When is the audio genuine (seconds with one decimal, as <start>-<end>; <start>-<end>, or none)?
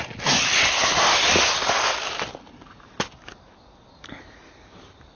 0.0-5.1